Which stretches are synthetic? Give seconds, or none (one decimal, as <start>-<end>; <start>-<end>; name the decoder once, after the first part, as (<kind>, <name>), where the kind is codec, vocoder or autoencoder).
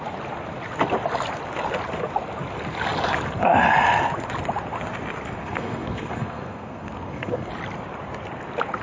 5.4-7.5 (codec, SNAC)